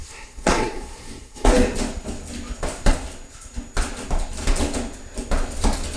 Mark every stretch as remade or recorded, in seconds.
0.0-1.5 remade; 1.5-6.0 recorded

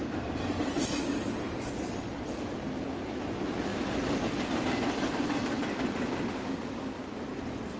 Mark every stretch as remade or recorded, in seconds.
0.0-7.8 recorded

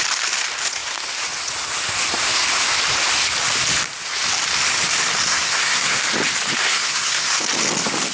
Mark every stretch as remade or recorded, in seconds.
0.0-5.3 recorded; 5.3-6.0 remade; 6.0-6.6 recorded; 6.6-7.3 remade; 7.3-8.1 recorded